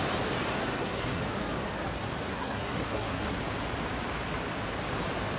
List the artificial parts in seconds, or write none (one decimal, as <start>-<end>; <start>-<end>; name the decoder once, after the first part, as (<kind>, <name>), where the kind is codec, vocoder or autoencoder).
0.6-1.2 (codec, SNAC); 2.3-3.4